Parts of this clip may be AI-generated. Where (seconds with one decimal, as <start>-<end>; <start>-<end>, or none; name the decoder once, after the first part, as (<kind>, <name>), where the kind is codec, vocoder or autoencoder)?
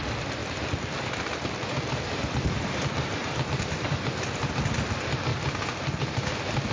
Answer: 0.4-4.4 (vocoder, BigVGAN v2); 5.3-6.2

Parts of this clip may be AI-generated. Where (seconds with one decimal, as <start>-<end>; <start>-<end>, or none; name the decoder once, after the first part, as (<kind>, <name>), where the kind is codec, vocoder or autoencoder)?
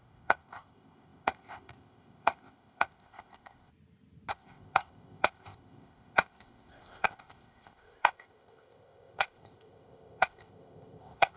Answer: 0.0-3.7 (codec, ZipCodec); 4.3-11.4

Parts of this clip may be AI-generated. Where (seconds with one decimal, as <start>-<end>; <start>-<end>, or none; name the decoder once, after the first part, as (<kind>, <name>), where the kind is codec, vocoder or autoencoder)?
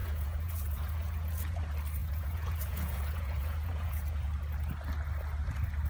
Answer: 0.0-1.6 (vocoder, Vocos); 2.0-4.3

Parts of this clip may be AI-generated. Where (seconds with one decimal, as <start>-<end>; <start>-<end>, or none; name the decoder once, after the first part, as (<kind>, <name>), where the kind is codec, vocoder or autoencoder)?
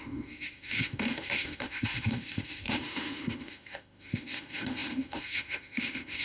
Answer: 0.0-6.2 (autoencoder, DAC-VAE)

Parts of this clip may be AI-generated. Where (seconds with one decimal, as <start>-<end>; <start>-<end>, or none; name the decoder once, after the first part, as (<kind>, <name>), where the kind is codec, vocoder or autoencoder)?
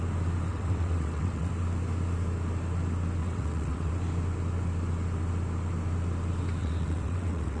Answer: 0.5-1.5 (vocoder, WaveNeXt); 3.2-3.9; 6.6-7.6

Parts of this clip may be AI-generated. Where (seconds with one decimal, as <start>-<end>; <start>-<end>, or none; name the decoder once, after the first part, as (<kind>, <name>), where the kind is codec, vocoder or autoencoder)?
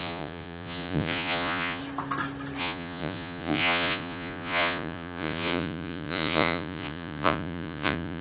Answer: 0.0-1.8 (vocoder, Vocos); 2.6-8.2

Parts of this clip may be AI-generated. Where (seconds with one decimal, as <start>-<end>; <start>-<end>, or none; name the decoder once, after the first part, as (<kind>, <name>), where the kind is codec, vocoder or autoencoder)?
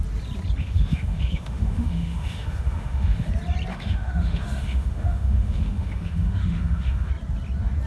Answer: 0.6-3.3 (autoencoder, DAC-VAE); 3.7-7.1